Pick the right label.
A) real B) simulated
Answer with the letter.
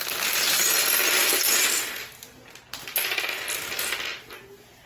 A